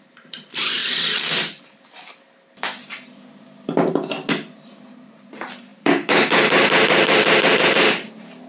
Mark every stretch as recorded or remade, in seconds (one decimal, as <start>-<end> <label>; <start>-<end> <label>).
0.0-0.8 remade; 0.8-5.1 recorded; 5.1-8.5 remade